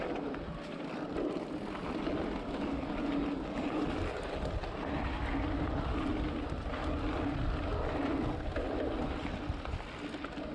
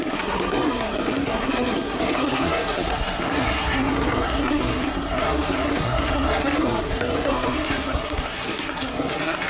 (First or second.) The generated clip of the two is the second